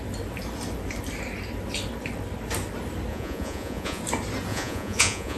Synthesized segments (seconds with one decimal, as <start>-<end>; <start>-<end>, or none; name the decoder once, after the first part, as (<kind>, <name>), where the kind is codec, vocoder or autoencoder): 3.1-4.0 (vocoder, Vocos); 4.5-5.4